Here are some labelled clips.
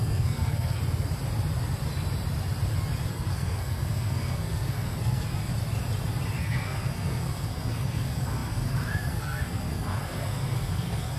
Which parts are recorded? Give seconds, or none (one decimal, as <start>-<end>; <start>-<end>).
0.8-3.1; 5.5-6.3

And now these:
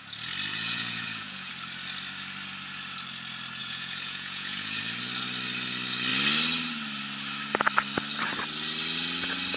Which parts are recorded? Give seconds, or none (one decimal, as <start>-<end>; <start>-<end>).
0.0-0.5; 1.5-3.6; 4.8-9.6

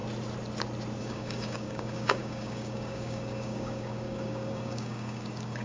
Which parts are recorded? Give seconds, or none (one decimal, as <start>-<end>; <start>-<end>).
0.0-1.0

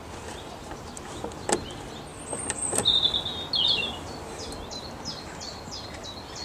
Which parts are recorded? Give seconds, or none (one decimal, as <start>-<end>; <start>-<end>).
0.0-6.4